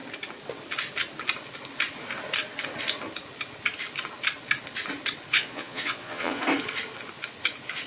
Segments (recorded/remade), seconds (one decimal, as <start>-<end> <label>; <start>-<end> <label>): 0.0-5.3 recorded; 5.3-6.4 remade; 6.4-7.9 recorded